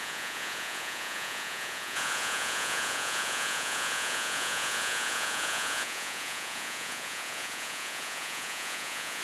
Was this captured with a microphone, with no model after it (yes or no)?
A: no